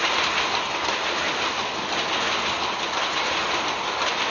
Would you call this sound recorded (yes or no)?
yes